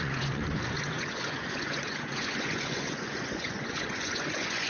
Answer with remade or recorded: remade